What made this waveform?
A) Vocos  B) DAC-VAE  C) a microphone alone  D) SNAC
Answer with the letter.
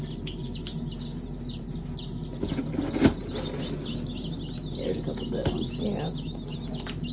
C